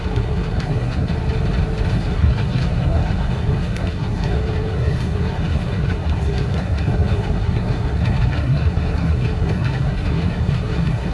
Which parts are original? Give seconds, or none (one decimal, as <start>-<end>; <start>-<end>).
1.1-1.9